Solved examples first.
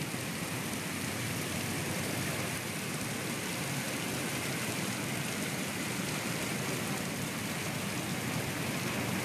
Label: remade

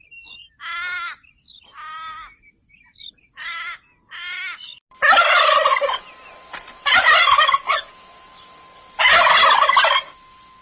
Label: recorded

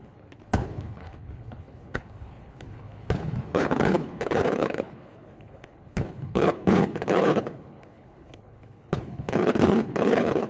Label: remade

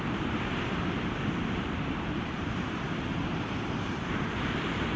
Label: remade